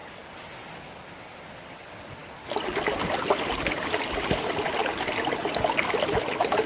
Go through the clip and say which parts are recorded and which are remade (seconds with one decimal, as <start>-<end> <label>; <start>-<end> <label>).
0.0-6.7 recorded